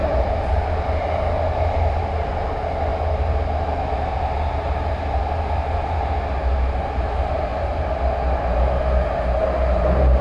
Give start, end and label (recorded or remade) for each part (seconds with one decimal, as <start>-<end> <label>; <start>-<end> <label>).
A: 0.0-10.2 recorded